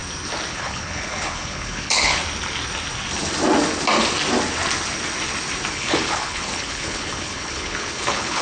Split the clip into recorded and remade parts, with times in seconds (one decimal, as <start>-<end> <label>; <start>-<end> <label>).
0.0-0.5 recorded; 0.5-2.2 remade; 2.2-5.7 recorded; 5.7-8.4 remade